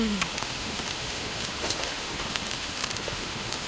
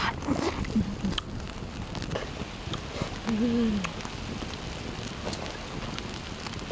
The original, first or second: second